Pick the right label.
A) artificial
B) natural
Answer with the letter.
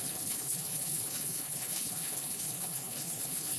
A